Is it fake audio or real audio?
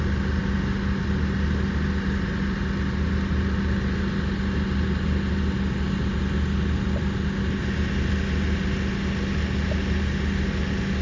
real